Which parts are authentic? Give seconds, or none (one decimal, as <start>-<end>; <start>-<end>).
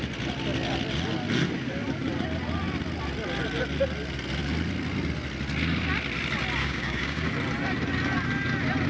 0.0-6.6; 7.3-8.9